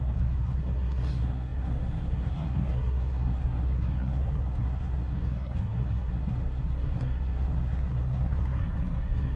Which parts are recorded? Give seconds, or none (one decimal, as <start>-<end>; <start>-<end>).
none